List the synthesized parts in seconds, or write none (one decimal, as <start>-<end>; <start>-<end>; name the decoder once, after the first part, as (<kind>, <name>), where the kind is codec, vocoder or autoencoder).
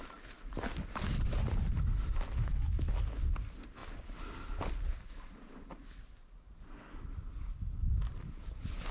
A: none